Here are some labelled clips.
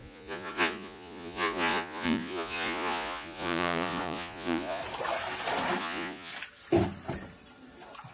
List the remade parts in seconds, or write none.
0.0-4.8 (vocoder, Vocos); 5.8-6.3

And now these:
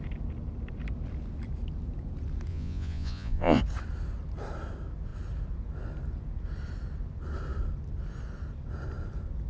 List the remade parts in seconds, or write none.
2.5-3.6 (vocoder, Vocos)

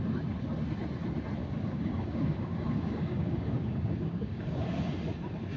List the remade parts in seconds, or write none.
1.4-4.8 (codec, DAC)